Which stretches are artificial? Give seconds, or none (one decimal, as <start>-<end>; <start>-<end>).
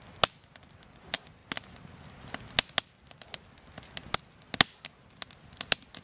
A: none